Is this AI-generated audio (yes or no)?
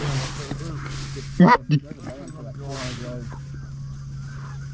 no